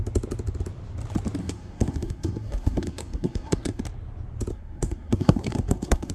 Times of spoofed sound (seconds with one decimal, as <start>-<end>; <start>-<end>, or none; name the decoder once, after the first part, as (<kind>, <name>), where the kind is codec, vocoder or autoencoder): 1.4-3.8 (codec, SNAC); 4.5-6.1